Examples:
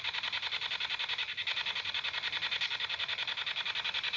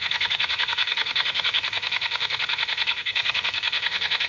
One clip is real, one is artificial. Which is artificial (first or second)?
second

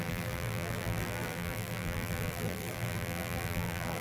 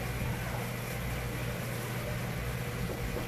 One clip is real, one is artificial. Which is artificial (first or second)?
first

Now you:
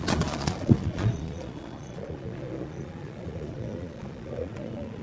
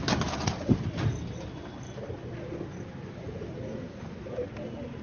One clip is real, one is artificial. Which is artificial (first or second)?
first